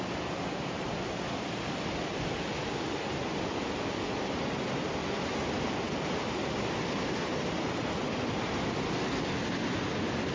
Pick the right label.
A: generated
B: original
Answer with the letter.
B